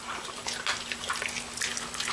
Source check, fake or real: real